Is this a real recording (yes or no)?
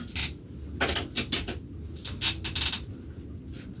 yes